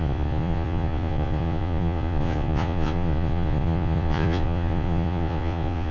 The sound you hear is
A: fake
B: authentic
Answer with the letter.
A